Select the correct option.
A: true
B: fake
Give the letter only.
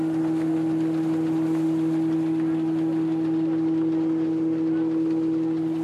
A